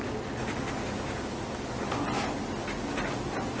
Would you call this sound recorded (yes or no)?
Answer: yes